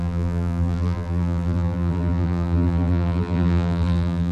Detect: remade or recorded remade